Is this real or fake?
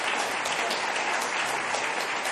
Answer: real